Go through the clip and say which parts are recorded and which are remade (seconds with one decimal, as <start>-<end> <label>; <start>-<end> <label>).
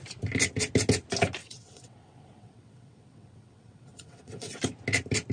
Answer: 0.0-1.4 recorded; 1.4-4.6 remade; 4.6-5.3 recorded